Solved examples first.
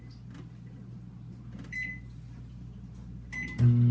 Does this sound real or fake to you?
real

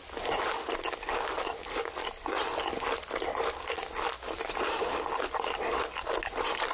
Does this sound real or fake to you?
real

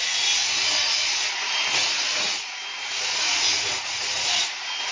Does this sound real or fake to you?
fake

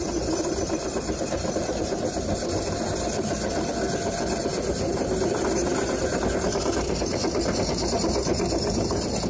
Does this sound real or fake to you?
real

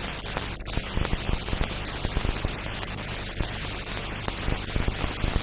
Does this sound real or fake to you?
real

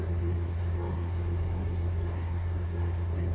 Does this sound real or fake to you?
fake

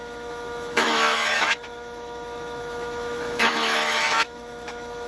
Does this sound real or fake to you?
fake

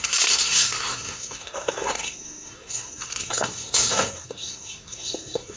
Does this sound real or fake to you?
fake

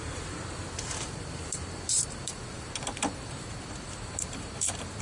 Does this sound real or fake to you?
fake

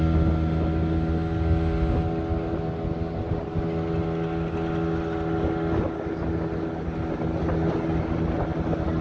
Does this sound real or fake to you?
real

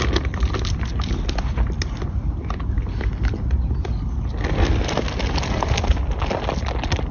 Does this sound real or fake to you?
real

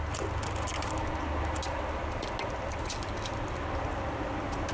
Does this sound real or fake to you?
real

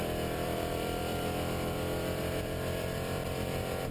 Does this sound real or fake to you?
fake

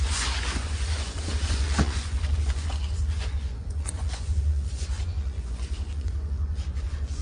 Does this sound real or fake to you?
fake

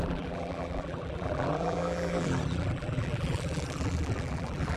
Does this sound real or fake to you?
fake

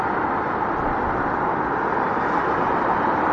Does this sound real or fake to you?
real